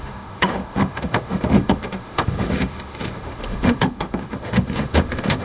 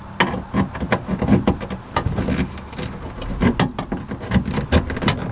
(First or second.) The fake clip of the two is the first